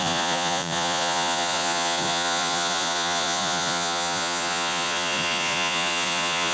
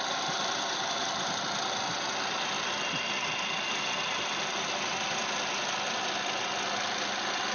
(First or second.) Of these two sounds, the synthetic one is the first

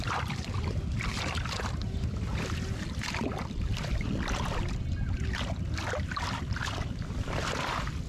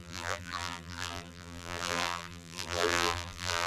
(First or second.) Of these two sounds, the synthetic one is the second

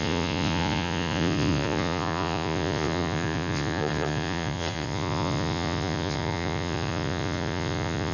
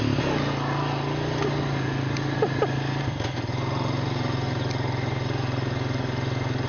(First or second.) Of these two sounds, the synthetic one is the first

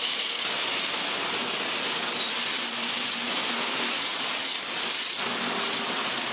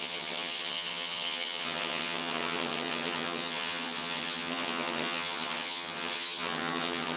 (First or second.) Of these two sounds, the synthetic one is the second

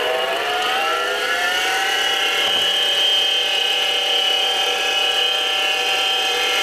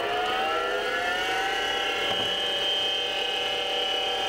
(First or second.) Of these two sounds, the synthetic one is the first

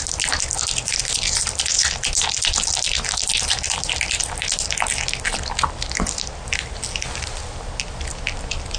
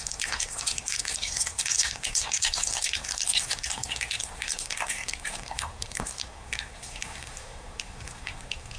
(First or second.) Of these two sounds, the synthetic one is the second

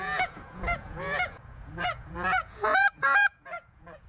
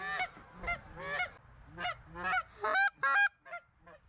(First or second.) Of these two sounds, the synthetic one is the first